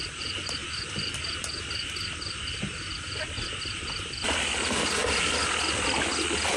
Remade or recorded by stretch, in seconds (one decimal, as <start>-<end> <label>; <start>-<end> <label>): 0.0-6.6 recorded